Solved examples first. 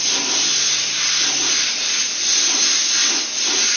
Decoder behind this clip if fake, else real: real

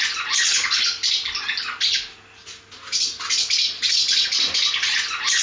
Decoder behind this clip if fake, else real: real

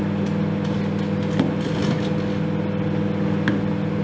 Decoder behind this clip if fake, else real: real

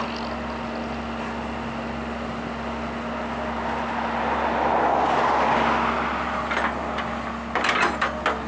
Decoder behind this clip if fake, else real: real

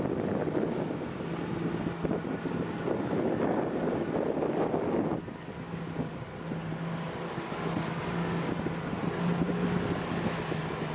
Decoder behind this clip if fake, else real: real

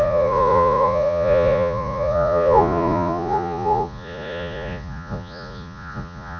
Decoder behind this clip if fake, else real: fake, vocoder, Vocos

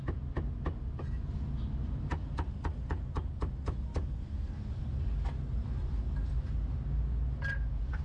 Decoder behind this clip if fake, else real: real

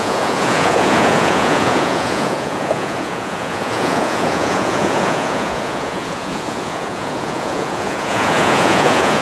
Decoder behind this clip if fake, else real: fake, vocoder, Vocos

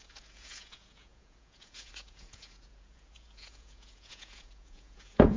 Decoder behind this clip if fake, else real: fake, vocoder, Vocos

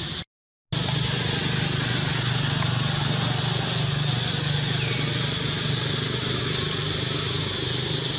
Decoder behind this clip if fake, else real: real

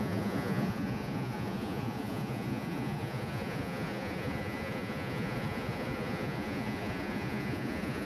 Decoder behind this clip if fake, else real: fake, vocoder, Vocos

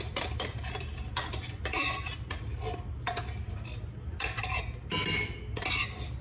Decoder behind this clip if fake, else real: real